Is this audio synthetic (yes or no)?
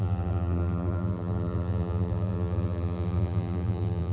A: yes